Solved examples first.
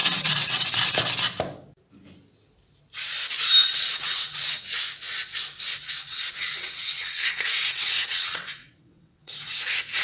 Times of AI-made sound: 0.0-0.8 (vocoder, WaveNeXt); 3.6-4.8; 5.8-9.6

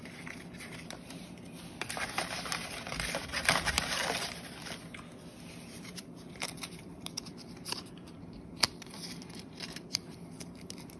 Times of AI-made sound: 0.0-4.0 (vocoder, BigVGAN v2); 5.4-11.0